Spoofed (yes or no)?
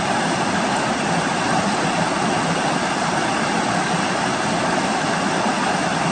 no